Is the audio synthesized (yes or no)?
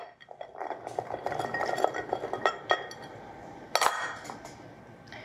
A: no